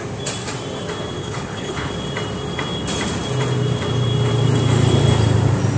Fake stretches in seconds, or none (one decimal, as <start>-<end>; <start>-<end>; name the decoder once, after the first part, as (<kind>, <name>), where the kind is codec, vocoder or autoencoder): 1.2-1.9 (codec, HILCodec)